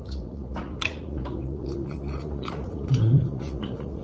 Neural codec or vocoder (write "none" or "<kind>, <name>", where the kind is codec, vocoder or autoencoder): vocoder, Vocos